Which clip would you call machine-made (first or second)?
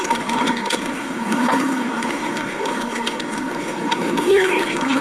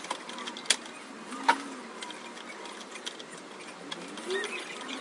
first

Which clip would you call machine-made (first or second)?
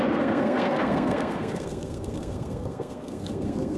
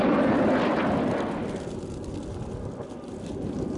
first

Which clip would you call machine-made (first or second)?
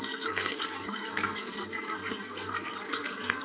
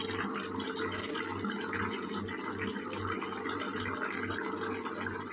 first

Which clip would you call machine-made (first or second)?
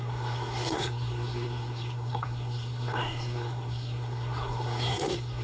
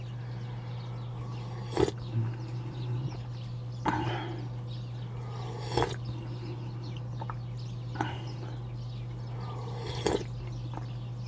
first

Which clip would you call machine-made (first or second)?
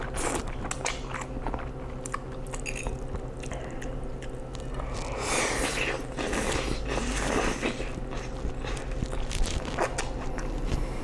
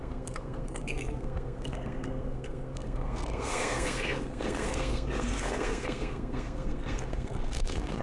second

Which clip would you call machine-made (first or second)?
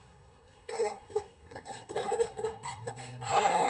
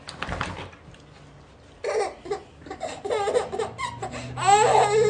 first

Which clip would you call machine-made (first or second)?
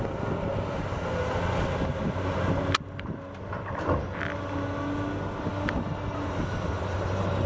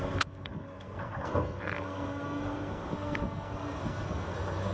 second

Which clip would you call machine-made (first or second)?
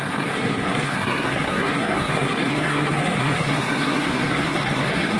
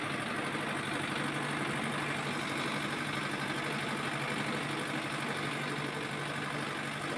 first